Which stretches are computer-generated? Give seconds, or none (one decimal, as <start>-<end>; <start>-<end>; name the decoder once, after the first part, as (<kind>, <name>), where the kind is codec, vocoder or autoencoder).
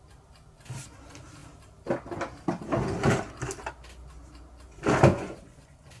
5.1-6.0 (vocoder, Vocos)